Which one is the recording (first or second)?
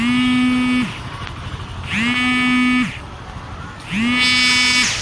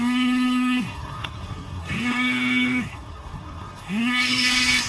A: first